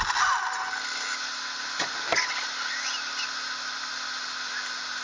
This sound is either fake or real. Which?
real